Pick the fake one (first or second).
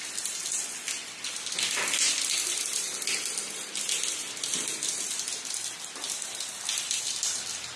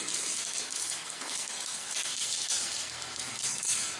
second